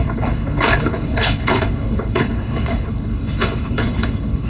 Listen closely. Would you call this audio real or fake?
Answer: fake